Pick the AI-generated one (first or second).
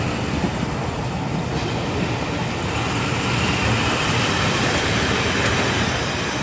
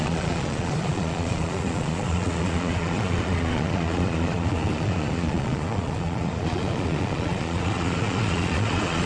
second